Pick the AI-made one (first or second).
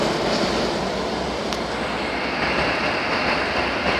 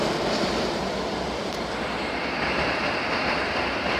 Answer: second